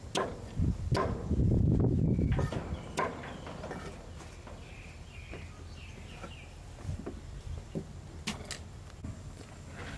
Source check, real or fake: real